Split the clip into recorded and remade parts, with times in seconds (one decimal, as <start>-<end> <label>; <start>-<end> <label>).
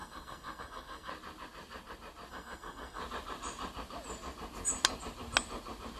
0.0-1.1 remade; 1.1-2.3 recorded; 2.3-3.0 remade; 3.0-6.0 recorded